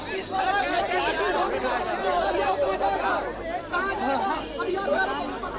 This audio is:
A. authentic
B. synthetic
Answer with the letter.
A